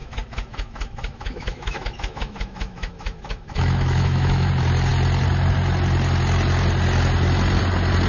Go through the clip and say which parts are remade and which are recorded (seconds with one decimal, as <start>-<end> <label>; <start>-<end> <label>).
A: 0.0-4.5 remade; 4.5-8.1 recorded